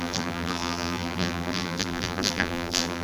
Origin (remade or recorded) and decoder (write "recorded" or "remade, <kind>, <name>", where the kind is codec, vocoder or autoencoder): remade, vocoder, BigVGAN v2